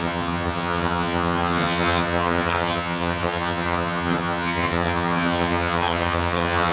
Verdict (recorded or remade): remade